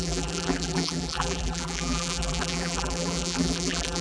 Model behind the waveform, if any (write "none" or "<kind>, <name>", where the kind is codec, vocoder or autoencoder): vocoder, BigVGAN v2